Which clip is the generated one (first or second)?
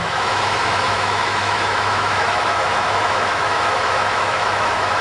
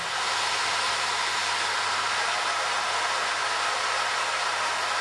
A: first